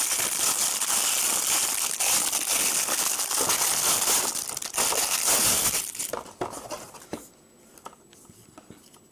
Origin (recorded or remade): recorded